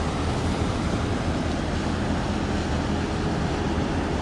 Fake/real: real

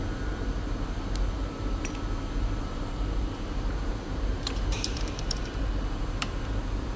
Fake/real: fake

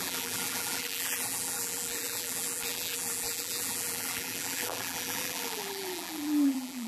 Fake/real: fake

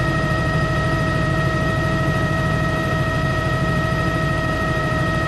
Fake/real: fake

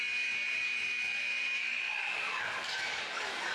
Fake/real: fake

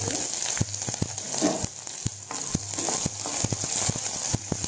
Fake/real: real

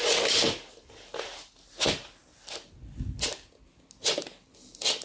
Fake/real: real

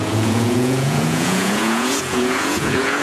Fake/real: fake